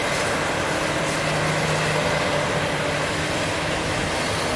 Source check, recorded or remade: recorded